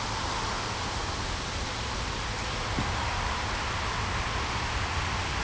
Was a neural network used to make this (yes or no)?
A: no